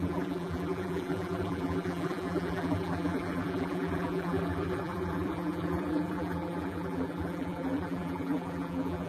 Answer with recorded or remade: remade